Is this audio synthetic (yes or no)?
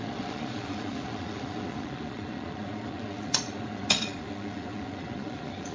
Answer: yes